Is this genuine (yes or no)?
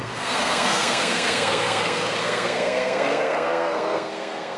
no